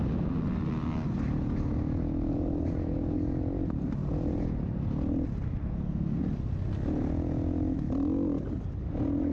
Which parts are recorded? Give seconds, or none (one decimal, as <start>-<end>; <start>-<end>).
0.0-5.6; 6.2-9.3